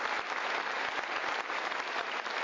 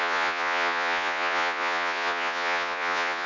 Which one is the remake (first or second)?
second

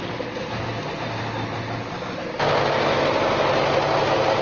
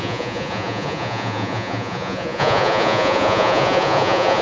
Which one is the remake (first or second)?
second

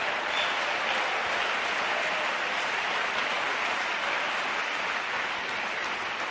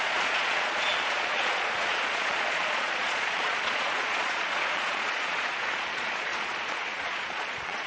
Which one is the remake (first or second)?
second